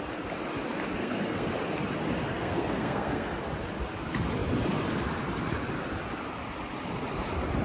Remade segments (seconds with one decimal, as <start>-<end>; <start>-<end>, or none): 1.0-1.6; 2.3-3.3